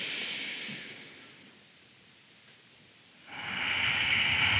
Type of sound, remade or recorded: recorded